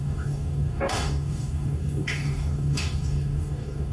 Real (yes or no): no